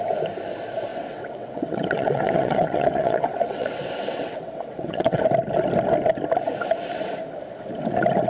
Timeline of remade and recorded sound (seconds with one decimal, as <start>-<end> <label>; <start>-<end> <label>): 0.0-0.9 recorded; 0.9-5.2 remade; 5.2-8.3 recorded